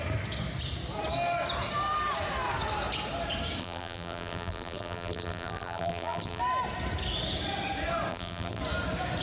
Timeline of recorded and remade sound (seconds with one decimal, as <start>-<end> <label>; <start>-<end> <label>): 0.0-3.6 recorded; 3.6-6.4 remade; 6.4-8.1 recorded; 8.1-8.6 remade; 8.6-9.2 recorded